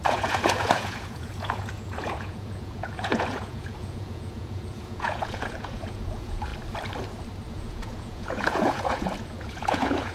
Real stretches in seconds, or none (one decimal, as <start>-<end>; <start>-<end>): 6.5-7.5